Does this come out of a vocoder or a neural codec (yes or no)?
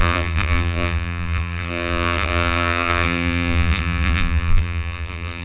yes